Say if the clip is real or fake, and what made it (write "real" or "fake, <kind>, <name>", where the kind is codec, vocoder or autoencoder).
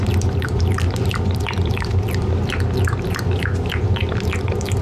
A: fake, vocoder, BigVGAN v2